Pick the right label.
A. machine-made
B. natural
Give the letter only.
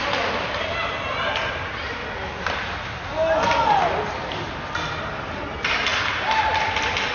B